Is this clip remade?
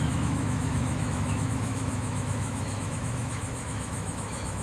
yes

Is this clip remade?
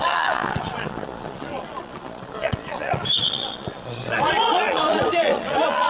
yes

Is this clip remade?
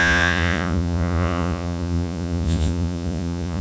yes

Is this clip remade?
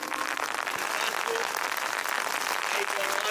no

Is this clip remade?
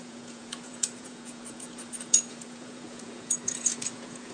yes